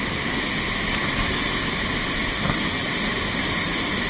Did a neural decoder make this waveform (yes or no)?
no